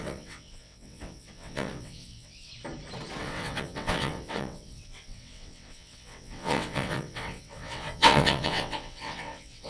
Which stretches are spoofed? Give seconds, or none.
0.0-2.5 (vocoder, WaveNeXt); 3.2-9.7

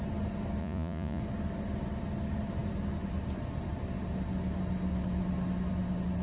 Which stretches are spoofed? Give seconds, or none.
0.6-1.2 (vocoder, Vocos)

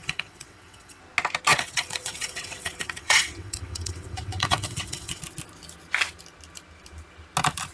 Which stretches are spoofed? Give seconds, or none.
0.0-1.0 (vocoder, WaveNeXt); 1.5-5.2

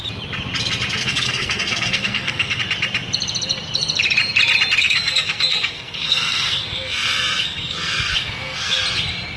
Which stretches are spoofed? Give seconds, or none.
1.0-2.6 (codec, SNAC); 4.8-8.8

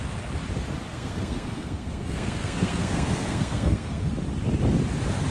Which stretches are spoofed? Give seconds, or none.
0.9-4.1 (codec, SNAC)

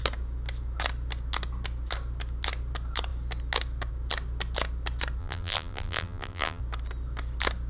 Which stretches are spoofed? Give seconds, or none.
5.2-6.6 (vocoder, BigVGAN v2)

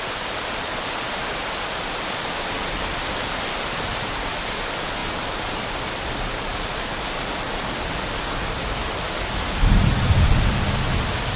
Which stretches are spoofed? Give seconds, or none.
none

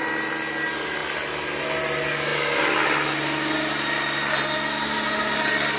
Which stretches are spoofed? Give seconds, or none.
none